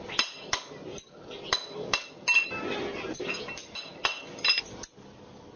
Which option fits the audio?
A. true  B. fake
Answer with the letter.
A